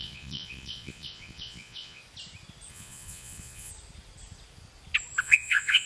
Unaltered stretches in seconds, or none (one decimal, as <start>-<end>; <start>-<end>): 2.0-2.7; 3.7-5.2